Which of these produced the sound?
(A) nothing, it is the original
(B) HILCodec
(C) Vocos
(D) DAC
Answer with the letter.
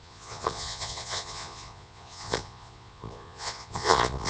C